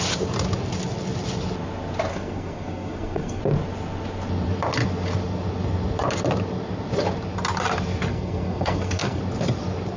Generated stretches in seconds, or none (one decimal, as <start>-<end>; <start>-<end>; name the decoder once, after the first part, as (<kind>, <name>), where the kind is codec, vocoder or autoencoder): 2.1-3.4 (codec, SNAC); 8.1-9.2